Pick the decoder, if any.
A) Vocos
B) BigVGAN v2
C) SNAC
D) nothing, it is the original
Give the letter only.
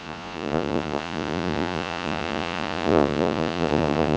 A